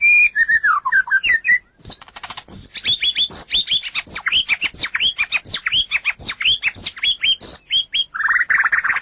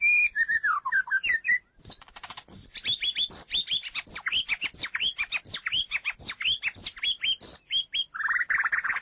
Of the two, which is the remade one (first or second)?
second